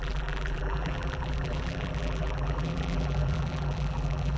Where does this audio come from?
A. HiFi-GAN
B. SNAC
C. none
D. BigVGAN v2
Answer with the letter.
D